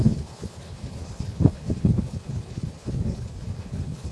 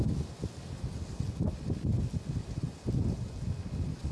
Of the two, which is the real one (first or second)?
second